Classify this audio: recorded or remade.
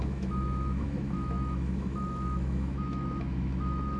remade